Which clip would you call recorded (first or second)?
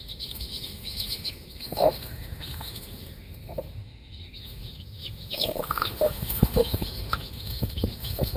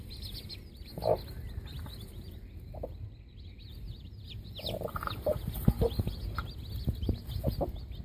second